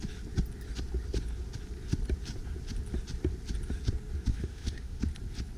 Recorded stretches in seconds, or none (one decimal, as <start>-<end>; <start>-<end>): 0.0-4.3; 5.0-5.6